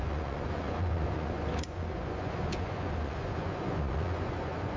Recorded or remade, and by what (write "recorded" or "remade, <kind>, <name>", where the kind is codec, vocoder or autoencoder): remade, vocoder, Vocos